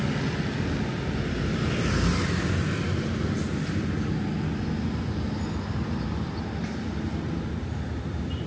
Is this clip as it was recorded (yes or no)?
yes